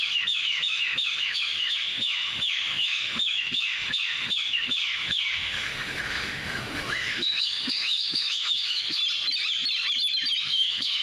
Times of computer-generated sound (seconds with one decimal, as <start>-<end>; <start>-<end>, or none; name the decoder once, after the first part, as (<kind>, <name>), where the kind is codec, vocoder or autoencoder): 0.0-9.0 (autoencoder, DAC-VAE); 10.4-11.0